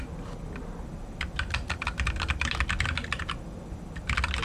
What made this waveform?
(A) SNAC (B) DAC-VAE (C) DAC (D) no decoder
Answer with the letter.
D